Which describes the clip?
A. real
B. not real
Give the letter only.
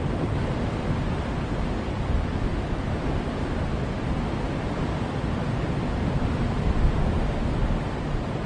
A